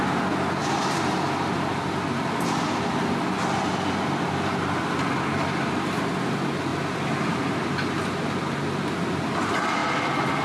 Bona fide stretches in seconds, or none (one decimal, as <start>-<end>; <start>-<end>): 0.0-0.6; 2.8-6.7; 7.7-10.4